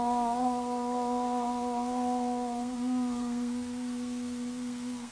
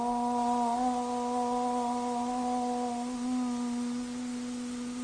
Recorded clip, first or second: second